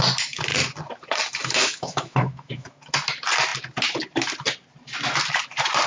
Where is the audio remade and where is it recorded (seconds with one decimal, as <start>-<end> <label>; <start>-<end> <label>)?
0.0-1.6 recorded; 1.6-2.8 remade; 2.8-5.9 recorded